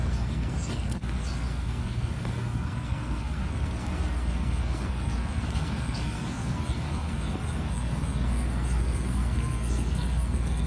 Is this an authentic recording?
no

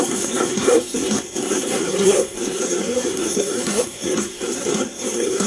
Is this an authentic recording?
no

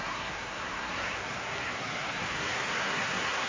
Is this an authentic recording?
no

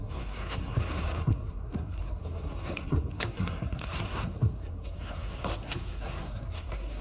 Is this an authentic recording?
no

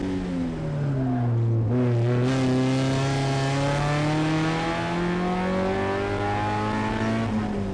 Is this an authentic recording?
yes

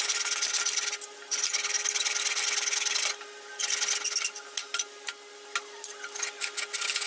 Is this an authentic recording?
yes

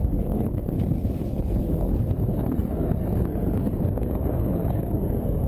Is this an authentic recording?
no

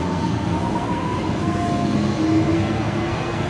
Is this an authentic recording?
no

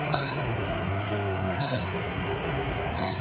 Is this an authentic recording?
no